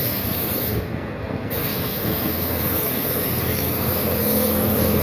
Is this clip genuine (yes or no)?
no